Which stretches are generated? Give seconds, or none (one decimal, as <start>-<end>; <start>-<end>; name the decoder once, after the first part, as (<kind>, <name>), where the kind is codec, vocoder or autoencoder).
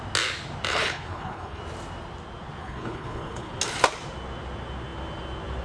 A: 0.7-1.6 (codec, HILCodec); 2.6-3.5